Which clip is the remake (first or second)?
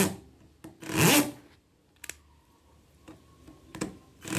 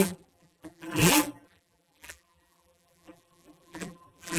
second